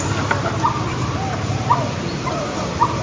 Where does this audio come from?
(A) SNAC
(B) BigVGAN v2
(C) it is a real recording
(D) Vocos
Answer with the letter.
C